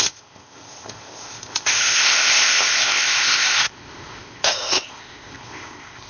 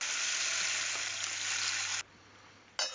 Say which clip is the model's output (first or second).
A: first